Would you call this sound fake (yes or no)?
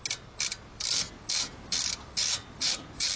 no